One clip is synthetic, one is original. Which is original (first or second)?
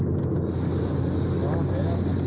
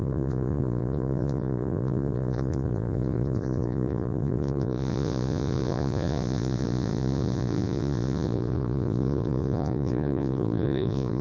first